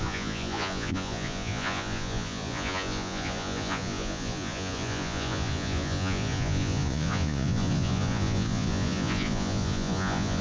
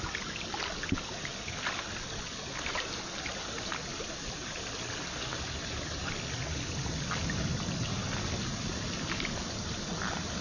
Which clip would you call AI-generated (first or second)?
first